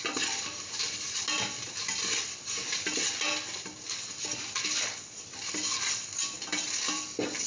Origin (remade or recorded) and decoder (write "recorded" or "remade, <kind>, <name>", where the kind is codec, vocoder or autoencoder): recorded